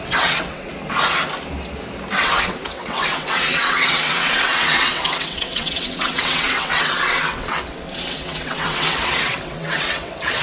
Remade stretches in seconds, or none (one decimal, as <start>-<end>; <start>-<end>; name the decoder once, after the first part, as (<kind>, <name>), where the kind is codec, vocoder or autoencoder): 0.0-0.7 (vocoder, WaveNeXt); 2.2-10.4